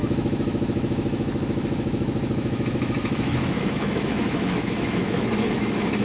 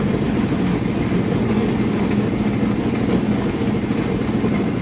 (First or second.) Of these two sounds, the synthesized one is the first